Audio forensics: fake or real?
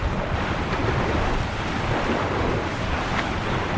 fake